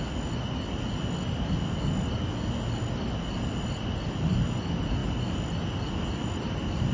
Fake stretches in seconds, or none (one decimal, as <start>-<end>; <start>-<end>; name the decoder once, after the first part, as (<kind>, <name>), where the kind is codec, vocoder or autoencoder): none